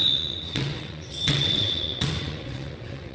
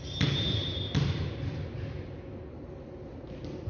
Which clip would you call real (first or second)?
second